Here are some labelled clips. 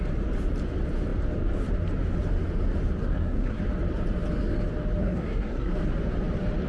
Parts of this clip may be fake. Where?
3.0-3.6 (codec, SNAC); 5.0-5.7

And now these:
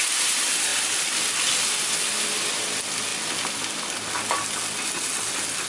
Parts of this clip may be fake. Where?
none

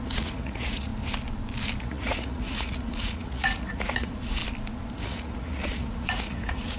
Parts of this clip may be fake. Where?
0.0-0.9 (vocoder, Vocos); 1.8-4.4; 4.9-6.8

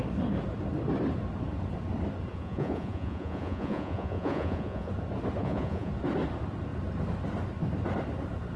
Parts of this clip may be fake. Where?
2.3-4.9 (vocoder, Vocos); 5.4-5.9

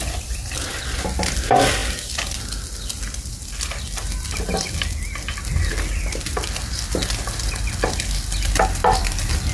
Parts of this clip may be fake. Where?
none